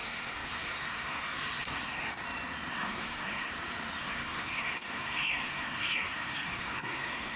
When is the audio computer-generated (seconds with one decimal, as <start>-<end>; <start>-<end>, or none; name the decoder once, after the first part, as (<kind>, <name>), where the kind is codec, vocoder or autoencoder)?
0.0-2.1 (codec, SNAC); 2.7-3.5; 4.0-7.4